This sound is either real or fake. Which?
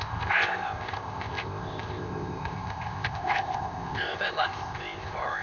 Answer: fake